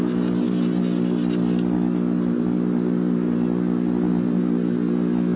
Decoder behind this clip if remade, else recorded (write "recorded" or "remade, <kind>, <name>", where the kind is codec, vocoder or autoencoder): recorded